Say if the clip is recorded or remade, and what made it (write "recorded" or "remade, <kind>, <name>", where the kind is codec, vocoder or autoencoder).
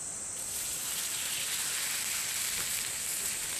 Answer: recorded